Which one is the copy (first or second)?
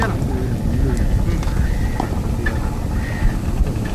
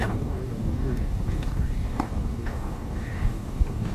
second